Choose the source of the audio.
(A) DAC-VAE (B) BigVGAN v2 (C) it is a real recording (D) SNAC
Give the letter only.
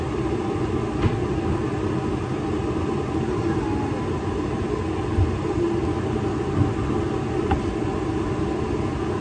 C